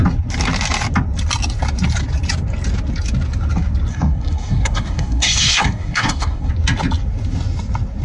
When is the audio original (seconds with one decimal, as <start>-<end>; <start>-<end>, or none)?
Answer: 0.0-3.9; 6.5-8.0